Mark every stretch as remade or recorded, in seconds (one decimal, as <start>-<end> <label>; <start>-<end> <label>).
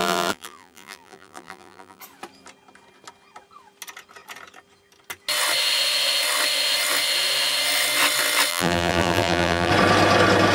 0.0-2.0 remade; 2.0-8.5 recorded; 8.5-9.7 remade; 9.7-10.5 recorded